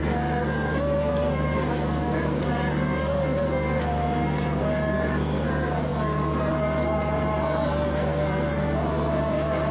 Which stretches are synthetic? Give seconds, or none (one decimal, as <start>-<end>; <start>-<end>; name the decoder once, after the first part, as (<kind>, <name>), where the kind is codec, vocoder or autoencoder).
0.0-9.7 (codec, SNAC)